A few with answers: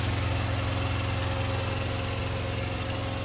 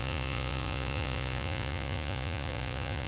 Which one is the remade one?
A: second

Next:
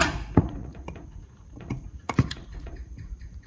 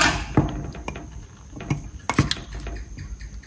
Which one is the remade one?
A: first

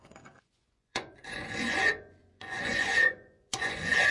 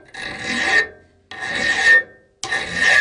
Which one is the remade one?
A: first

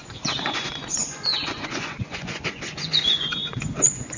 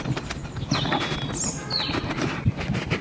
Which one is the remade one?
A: first